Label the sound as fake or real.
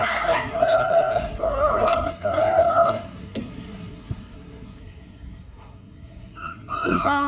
fake